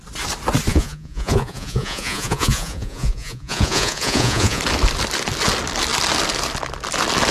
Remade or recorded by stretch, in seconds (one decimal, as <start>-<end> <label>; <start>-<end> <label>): 0.0-0.7 recorded; 0.7-4.6 remade; 4.6-7.3 recorded